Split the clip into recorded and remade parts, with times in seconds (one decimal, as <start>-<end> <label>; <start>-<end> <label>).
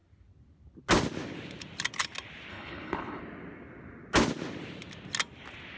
0.0-2.5 recorded; 2.5-3.2 remade; 3.2-5.8 recorded